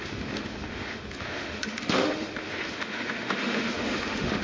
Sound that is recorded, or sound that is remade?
remade